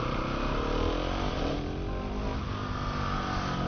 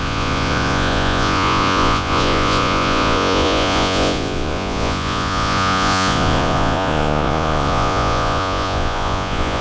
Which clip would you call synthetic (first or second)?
second